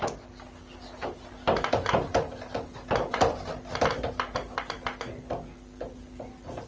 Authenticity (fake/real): real